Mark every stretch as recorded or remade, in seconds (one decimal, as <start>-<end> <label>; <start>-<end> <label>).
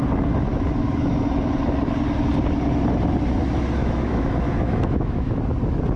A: 0.0-0.5 recorded; 0.5-1.1 remade; 1.1-3.8 recorded; 3.8-5.4 remade; 5.4-6.0 recorded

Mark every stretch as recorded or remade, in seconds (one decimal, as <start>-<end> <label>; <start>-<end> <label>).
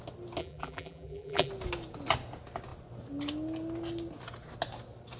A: 0.0-0.4 recorded; 0.4-1.5 remade; 1.5-5.2 recorded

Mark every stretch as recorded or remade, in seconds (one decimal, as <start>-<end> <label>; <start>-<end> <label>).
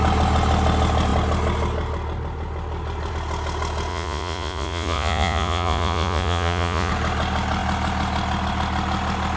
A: 0.0-3.9 recorded; 3.9-6.9 remade; 6.9-9.4 recorded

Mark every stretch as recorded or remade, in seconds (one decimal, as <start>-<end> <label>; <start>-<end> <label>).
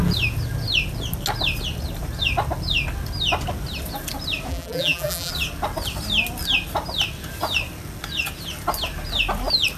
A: 0.0-4.5 recorded; 4.5-5.3 remade; 5.3-9.8 recorded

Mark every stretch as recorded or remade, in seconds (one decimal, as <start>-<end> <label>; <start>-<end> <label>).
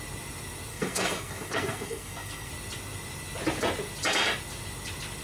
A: 0.0-0.7 recorded; 0.7-2.5 remade; 2.5-5.2 recorded